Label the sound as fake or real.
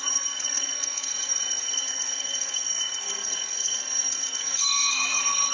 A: fake